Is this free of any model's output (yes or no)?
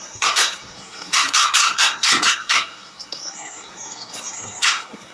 no